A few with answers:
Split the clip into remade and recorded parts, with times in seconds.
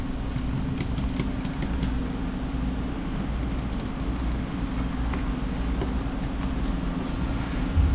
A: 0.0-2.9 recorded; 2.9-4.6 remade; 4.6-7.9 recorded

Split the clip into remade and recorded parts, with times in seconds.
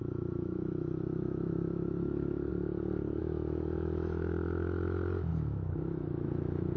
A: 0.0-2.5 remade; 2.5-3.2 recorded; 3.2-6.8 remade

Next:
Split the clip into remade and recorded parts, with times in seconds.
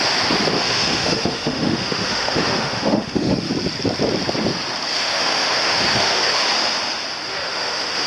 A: 0.0-0.5 recorded; 0.5-3.5 remade; 3.5-4.9 recorded; 4.9-6.4 remade; 6.4-7.3 recorded; 7.3-8.1 remade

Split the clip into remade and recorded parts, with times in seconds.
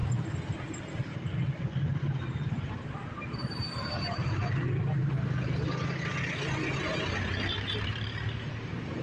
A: 0.0-9.0 recorded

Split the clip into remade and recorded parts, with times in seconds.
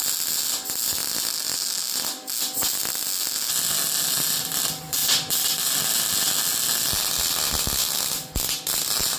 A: 0.0-9.2 recorded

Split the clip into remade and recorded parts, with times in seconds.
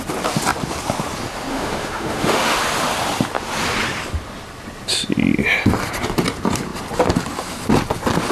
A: 0.0-1.5 recorded; 1.5-2.6 remade; 2.6-8.3 recorded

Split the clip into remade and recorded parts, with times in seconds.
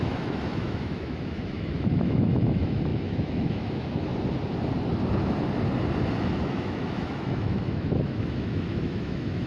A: 0.0-4.1 remade; 4.1-6.2 recorded; 6.2-9.5 remade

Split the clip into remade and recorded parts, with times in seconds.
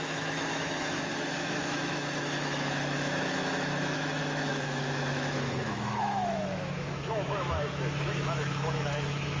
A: 0.0-9.4 remade